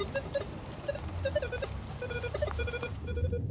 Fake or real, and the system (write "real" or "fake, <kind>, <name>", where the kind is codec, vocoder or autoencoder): fake, vocoder, BigVGAN v2